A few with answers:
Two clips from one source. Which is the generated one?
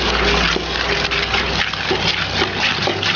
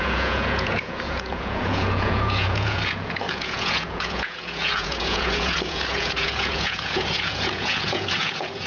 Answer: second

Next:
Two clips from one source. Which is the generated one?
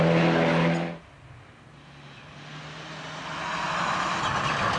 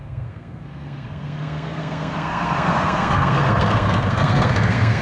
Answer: second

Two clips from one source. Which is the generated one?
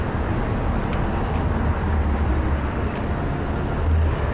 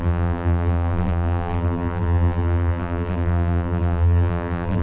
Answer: second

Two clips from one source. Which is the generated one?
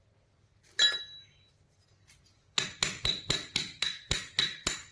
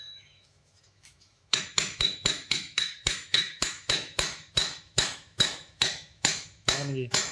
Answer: second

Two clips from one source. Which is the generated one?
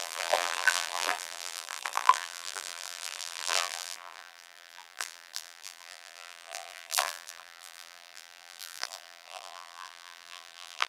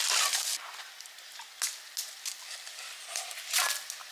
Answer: first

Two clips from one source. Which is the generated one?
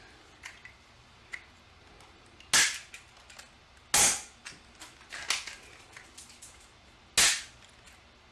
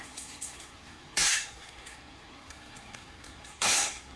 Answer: second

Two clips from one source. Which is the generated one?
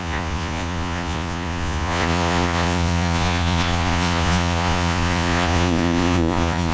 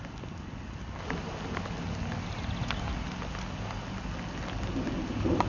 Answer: first